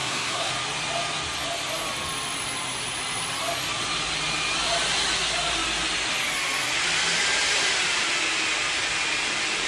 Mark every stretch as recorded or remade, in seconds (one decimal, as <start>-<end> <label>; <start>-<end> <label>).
0.0-0.5 remade; 0.5-9.7 recorded